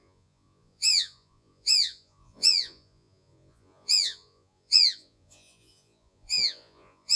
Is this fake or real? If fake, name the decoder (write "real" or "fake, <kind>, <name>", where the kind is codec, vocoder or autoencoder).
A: fake, vocoder, Vocos